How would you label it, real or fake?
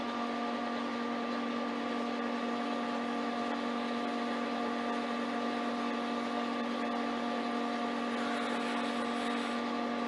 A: real